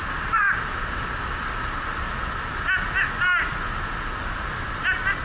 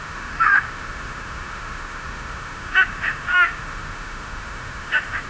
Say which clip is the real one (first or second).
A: first